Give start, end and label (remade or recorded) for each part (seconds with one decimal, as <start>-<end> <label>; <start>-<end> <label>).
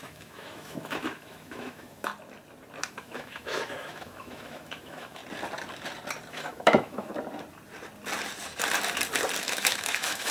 0.0-2.1 remade; 2.1-2.8 recorded; 2.8-5.2 remade; 5.2-6.3 recorded; 6.3-7.1 remade; 7.1-9.4 recorded; 9.4-10.3 remade